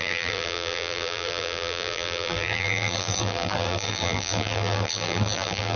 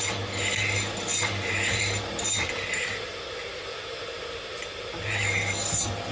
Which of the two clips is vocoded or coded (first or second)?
first